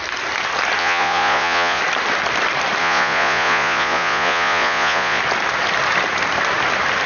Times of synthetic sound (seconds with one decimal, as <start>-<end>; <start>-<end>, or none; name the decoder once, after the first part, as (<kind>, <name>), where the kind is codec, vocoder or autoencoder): 0.8-1.8 (vocoder, Vocos); 2.8-5.2